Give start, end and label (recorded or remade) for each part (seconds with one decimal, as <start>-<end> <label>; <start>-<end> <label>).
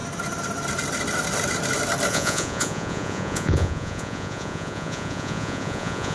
0.0-2.1 recorded; 2.1-6.1 remade